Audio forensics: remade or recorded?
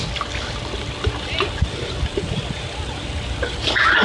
recorded